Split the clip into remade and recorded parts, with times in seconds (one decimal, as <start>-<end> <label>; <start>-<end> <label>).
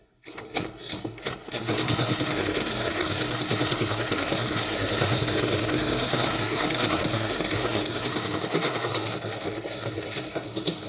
0.0-10.9 remade